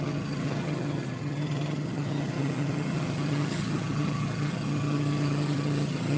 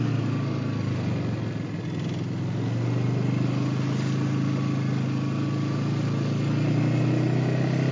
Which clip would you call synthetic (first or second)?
first